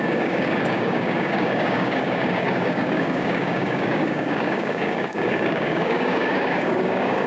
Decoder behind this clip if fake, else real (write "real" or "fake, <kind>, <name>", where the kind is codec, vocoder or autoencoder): fake, codec, DAC